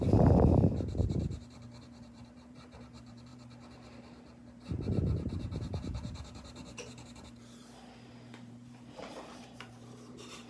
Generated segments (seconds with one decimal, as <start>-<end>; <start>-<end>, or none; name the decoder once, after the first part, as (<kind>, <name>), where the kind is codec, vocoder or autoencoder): 0.0-10.5 (vocoder, BigVGAN v2)